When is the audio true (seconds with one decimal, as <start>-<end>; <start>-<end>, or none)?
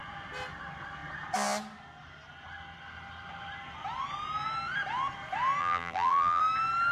0.0-5.6; 6.4-6.9